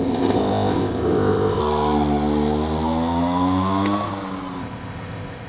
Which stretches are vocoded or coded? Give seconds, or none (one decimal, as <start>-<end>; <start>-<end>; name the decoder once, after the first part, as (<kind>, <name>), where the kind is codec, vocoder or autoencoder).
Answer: 0.0-1.6 (codec, ZipCodec); 4.6-5.5